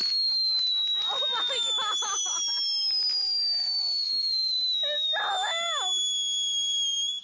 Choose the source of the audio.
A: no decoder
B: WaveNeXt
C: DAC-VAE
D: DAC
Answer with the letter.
A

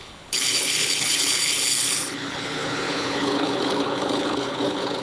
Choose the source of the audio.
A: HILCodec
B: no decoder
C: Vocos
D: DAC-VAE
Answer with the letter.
A